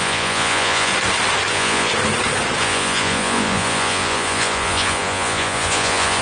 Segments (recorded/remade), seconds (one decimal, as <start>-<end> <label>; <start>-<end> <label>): 0.0-0.9 remade; 0.9-1.5 recorded; 1.5-1.9 remade; 1.9-2.6 recorded; 2.6-6.2 remade